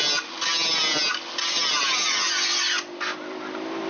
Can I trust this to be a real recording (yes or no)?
yes